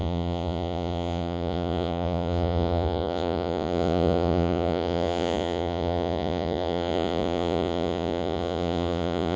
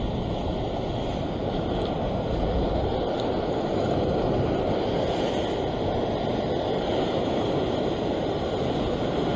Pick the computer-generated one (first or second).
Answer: first